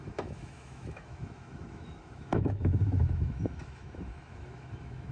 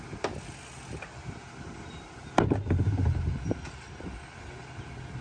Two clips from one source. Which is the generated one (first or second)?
first